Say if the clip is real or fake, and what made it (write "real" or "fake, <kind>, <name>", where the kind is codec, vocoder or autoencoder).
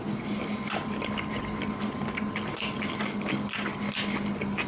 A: real